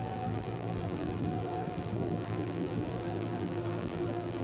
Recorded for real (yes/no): no